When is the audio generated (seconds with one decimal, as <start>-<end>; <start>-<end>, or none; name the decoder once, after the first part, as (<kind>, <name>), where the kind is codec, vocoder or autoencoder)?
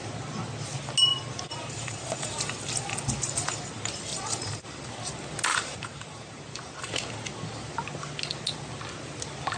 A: 1.1-2.4 (vocoder, BigVGAN v2); 4.1-4.9; 5.5-6.9